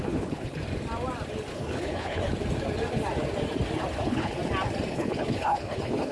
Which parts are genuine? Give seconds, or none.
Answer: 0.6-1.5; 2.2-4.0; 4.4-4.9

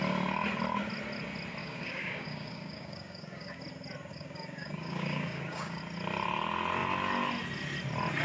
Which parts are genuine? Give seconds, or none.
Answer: 0.0-1.6; 3.6-4.1; 5.8-8.2